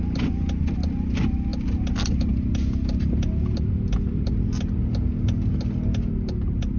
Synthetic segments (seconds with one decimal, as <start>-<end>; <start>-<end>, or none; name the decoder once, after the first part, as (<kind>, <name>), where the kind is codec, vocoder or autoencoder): none